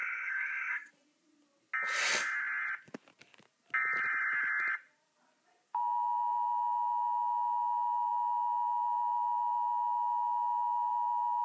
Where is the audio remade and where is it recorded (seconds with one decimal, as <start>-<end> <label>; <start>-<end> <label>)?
0.0-0.9 remade; 0.9-11.4 recorded